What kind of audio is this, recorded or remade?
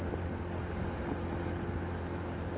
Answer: recorded